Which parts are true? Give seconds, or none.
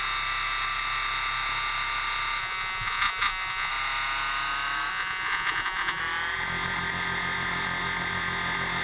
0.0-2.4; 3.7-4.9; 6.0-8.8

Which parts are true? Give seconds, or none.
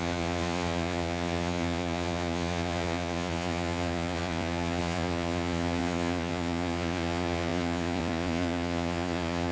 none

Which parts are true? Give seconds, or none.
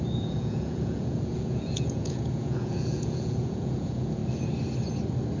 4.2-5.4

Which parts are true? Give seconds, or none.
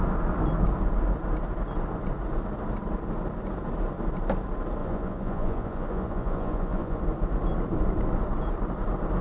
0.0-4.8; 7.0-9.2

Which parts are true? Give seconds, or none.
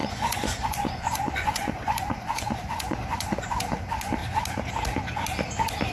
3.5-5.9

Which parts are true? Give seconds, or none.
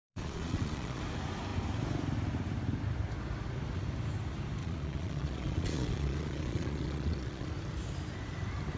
1.0-4.6; 7.5-8.8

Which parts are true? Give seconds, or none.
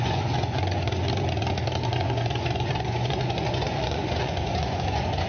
1.0-1.9